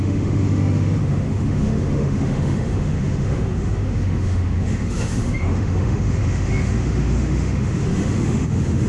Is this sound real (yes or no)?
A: no